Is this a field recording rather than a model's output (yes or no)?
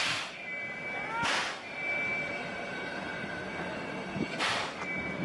yes